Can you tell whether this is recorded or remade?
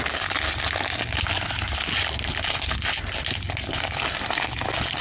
recorded